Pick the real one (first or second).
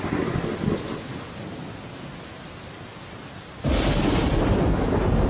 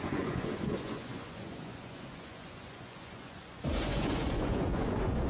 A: first